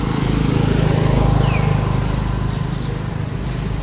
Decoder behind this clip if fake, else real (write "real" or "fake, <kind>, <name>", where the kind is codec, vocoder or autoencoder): real